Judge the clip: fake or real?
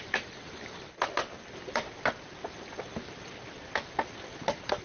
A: real